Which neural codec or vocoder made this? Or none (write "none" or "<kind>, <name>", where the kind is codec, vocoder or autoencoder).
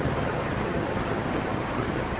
vocoder, HiFi-GAN